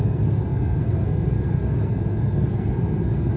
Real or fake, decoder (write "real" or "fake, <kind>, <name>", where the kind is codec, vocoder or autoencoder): fake, codec, SNAC